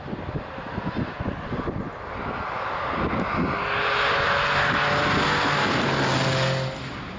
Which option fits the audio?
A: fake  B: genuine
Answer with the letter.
B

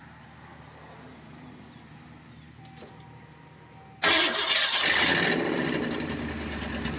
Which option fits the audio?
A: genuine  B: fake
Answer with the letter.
A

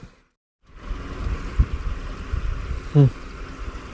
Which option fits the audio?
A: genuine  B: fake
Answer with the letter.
A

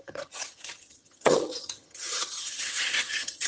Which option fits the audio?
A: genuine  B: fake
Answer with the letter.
B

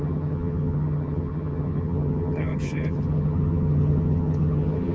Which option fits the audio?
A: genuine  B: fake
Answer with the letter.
B